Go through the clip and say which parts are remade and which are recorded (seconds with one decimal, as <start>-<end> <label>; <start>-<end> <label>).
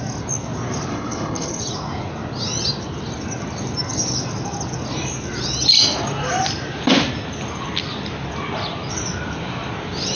0.0-0.9 recorded; 0.9-1.6 remade; 1.6-10.1 recorded